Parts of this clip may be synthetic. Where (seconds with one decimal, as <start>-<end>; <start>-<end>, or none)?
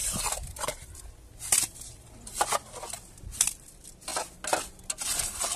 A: 0.0-3.4